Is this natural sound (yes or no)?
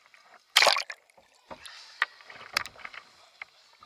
yes